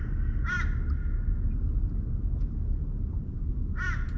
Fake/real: real